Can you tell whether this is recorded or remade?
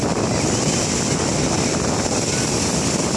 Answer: remade